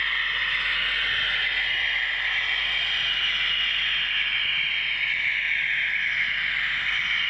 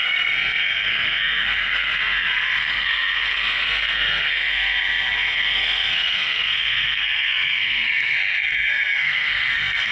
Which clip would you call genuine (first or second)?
first